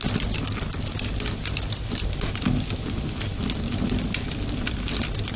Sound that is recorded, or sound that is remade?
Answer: recorded